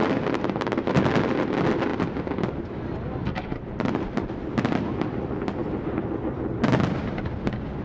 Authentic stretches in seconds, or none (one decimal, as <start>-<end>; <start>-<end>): 0.0-7.8